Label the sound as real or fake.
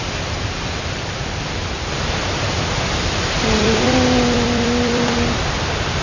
fake